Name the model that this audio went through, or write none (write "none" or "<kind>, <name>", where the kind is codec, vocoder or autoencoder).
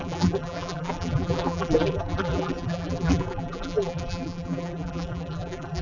vocoder, BigVGAN v2